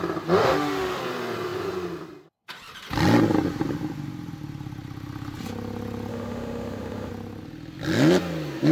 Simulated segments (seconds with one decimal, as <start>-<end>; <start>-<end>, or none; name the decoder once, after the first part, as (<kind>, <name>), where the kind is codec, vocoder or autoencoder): 0.4-1.0 (autoencoder, DAC-VAE); 6.1-7.1